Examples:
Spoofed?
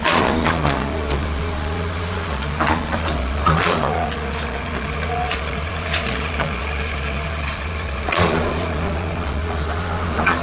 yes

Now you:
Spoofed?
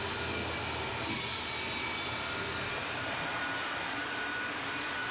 no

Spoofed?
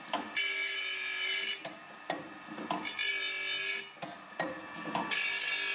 no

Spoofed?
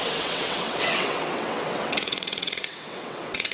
yes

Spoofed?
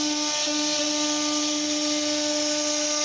no